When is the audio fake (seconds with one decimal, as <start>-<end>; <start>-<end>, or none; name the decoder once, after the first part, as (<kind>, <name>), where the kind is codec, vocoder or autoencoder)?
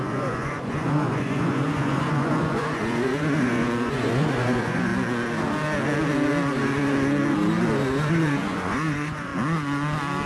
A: 0.0-4.9 (vocoder, Vocos); 8.1-9.3